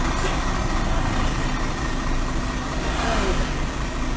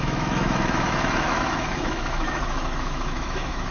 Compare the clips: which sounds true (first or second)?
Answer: first